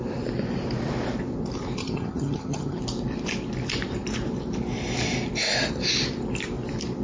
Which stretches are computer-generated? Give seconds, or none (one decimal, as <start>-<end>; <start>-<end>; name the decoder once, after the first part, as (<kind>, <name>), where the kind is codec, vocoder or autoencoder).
1.8-2.8 (vocoder, HiFi-GAN)